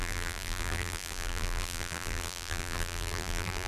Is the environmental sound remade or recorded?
remade